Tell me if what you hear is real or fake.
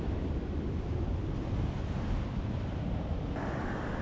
real